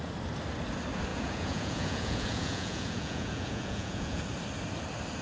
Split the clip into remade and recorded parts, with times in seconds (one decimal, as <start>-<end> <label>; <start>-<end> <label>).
0.0-1.1 recorded; 1.1-4.2 remade; 4.2-5.2 recorded